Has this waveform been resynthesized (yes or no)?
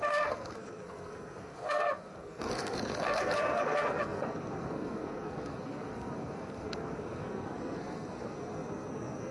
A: yes